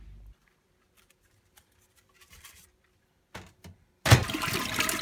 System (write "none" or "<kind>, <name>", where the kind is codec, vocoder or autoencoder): vocoder, BigVGAN v2